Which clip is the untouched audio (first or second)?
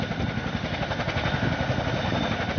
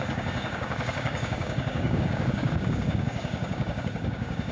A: first